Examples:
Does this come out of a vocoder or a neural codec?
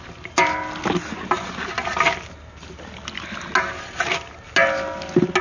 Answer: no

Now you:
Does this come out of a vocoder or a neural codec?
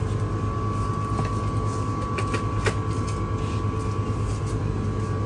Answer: no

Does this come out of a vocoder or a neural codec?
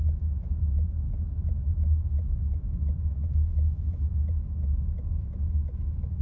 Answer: yes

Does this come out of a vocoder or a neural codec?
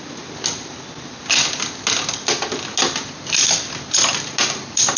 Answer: no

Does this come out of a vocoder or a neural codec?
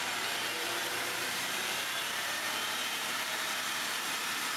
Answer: yes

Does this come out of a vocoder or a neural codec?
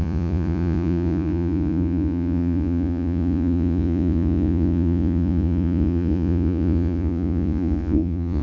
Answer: yes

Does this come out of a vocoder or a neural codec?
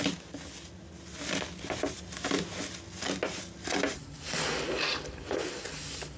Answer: no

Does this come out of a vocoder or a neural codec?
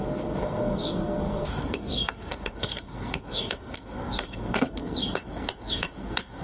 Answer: yes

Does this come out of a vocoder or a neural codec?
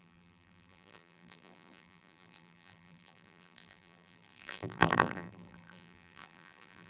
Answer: yes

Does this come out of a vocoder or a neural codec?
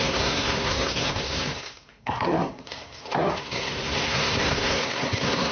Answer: yes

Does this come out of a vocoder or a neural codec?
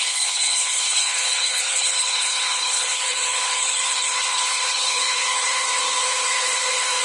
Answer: yes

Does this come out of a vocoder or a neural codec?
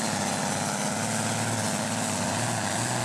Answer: no